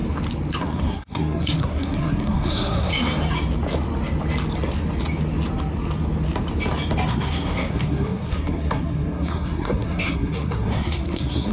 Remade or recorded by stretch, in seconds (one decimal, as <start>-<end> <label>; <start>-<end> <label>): 0.0-0.6 recorded; 0.6-2.9 remade; 2.9-7.1 recorded; 7.1-11.5 remade